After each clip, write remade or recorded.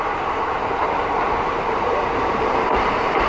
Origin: remade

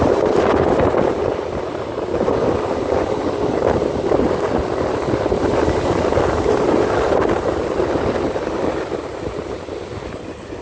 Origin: remade